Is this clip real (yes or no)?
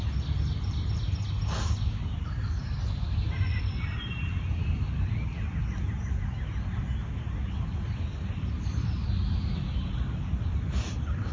yes